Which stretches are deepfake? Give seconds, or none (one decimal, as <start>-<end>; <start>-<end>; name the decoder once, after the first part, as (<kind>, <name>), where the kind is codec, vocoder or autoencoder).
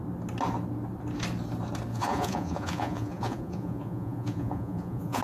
1.9-5.2 (vocoder, Vocos)